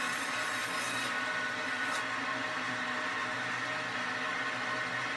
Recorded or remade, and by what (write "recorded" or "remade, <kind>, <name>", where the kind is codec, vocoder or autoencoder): recorded